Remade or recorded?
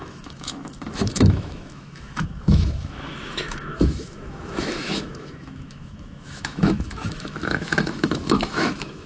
remade